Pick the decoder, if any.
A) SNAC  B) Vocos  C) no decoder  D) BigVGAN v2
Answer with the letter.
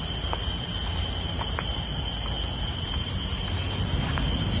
C